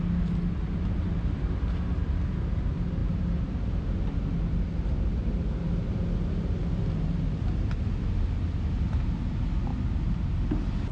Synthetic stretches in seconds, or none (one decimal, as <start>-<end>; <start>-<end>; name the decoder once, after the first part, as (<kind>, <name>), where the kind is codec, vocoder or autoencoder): 3.0-3.7 (vocoder, BigVGAN v2)